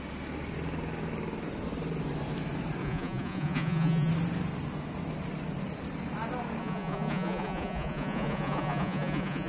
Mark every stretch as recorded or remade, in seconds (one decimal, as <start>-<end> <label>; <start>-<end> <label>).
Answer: 0.0-2.8 recorded; 2.8-4.1 remade; 4.1-6.6 recorded; 6.6-9.5 remade